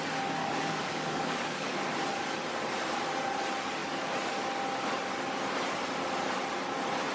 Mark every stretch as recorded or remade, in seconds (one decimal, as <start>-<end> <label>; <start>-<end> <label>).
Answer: 0.0-0.4 recorded; 0.4-1.8 remade; 1.8-7.1 recorded